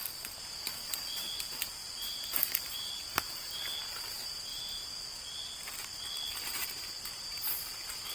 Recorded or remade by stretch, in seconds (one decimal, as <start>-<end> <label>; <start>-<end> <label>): 0.0-8.1 recorded